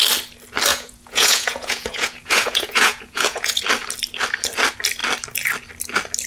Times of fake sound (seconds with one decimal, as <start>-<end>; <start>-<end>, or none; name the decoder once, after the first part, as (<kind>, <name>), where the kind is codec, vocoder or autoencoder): 0.7-3.6 (vocoder, Vocos)